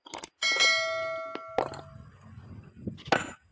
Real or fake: real